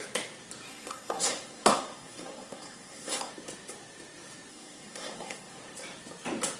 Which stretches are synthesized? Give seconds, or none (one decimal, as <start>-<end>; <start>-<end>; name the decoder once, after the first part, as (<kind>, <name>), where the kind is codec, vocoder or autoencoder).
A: 0.7-3.3 (codec, SNAC); 4.5-5.6